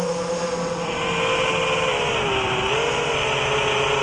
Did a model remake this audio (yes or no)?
no